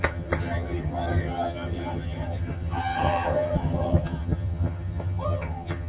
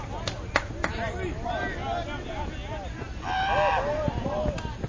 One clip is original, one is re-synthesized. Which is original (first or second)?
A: second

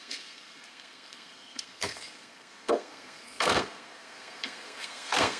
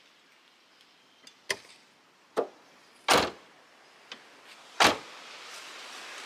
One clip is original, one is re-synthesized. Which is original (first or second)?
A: second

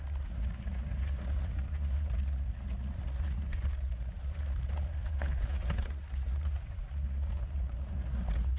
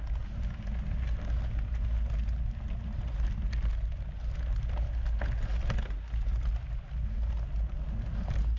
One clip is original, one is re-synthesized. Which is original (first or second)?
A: second